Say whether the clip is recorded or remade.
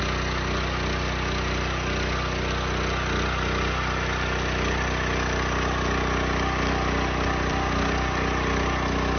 recorded